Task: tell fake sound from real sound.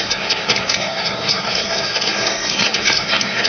fake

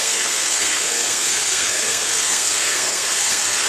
fake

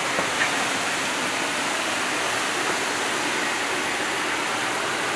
real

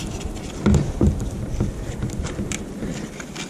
real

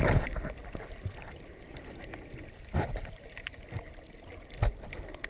real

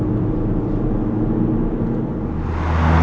real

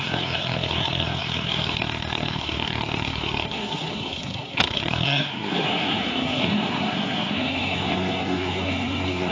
fake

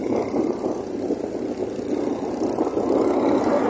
real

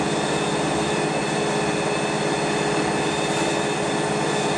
real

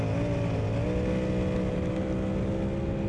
real